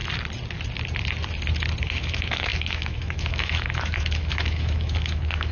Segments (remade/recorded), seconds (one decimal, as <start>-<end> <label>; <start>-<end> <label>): 0.0-1.8 recorded; 1.8-5.5 remade